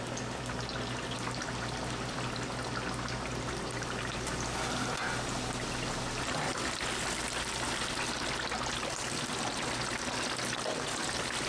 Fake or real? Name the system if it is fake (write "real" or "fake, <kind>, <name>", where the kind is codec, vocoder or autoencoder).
real